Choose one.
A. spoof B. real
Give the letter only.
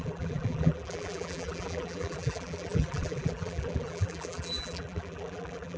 A